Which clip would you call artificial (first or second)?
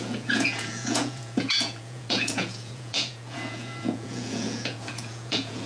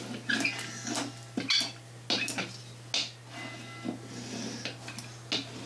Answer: first